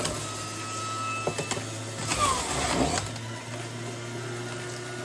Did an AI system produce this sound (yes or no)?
no